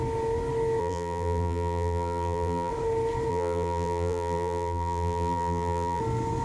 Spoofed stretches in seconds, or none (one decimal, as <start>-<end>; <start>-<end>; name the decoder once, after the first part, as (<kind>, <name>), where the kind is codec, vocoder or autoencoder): 0.8-2.7 (vocoder, BigVGAN v2); 3.3-6.0